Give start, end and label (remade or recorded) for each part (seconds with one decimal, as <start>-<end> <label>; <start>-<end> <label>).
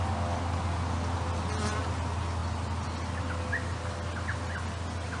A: 0.0-5.2 recorded